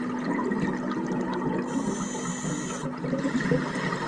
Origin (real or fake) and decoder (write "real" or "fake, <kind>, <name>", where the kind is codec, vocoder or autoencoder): real